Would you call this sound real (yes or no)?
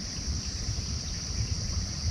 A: yes